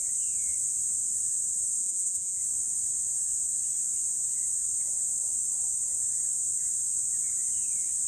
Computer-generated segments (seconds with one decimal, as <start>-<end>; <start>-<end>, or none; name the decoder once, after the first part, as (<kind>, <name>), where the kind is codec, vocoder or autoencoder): 1.8-2.4 (vocoder, Vocos)